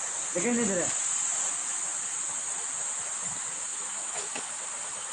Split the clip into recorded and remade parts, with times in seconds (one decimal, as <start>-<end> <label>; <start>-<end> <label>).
0.0-3.7 recorded; 3.7-4.6 remade; 4.6-5.1 recorded